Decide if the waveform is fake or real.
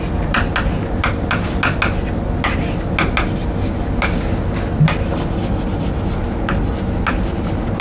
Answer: real